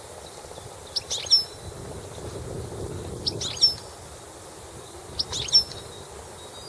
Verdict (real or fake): real